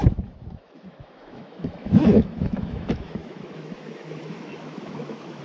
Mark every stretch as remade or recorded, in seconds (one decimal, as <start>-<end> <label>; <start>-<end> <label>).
0.0-5.4 remade